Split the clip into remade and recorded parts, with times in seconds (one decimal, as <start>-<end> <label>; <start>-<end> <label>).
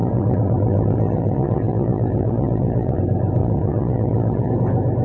0.0-3.0 remade; 3.0-3.4 recorded; 3.4-4.5 remade; 4.5-5.0 recorded